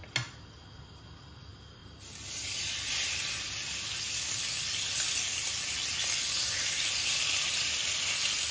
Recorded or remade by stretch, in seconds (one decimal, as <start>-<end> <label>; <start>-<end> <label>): 0.0-8.5 recorded